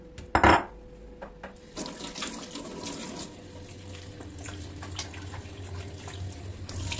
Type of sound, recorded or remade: recorded